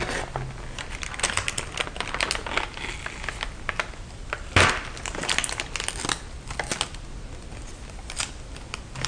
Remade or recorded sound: recorded